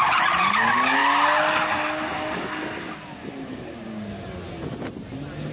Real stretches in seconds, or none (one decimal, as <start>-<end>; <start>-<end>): 0.0-5.5